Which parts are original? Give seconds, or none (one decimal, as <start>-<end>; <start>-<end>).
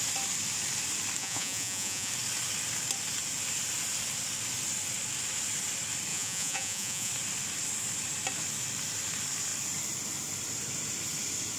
0.0-1.2; 2.1-6.1; 7.1-11.6